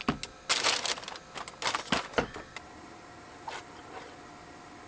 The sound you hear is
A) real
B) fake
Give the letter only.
A